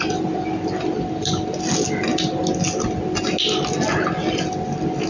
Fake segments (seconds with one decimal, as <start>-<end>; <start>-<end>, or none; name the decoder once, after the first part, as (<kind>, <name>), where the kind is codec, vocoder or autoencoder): none

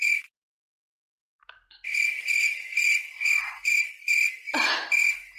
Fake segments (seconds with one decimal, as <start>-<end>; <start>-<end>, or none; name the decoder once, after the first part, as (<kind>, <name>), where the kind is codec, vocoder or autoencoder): none

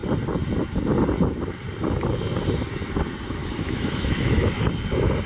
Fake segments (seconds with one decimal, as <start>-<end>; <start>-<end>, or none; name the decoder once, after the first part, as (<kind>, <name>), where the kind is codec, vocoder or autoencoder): 3.4-4.5 (autoencoder, DAC-VAE)

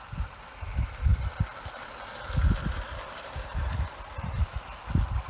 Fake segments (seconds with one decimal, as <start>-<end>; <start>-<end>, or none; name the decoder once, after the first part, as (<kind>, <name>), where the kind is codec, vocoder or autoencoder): none

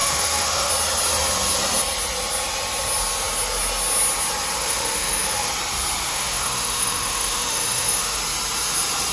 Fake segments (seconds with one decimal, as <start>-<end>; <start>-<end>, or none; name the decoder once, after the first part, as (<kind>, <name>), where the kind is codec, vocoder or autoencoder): 0.0-0.7 (autoencoder, DAC-VAE); 4.6-5.5; 6.1-8.2